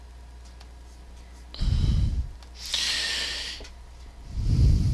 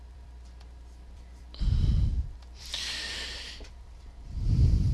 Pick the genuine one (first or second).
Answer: first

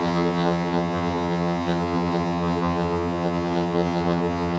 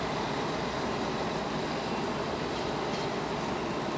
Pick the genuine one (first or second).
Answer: second